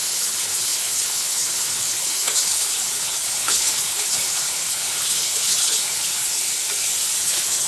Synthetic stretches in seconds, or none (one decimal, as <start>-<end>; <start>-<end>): 0.0-6.4; 7.2-7.7